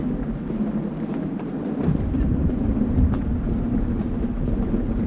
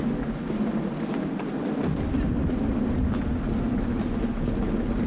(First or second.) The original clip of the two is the second